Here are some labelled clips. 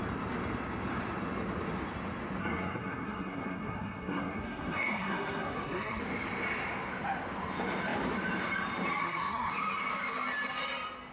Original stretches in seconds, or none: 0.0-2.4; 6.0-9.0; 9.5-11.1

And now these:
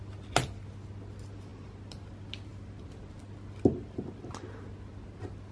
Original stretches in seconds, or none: 0.0-5.5

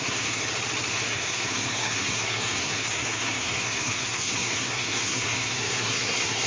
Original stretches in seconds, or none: 0.4-0.9